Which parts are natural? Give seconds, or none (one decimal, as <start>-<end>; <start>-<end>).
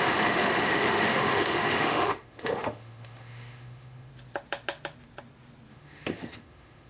4.1-5.7